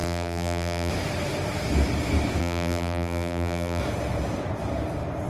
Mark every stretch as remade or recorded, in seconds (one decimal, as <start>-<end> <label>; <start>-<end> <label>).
0.0-0.9 remade; 0.9-2.4 recorded; 2.4-3.8 remade; 3.8-5.3 recorded